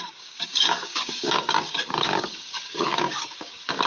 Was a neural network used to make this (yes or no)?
yes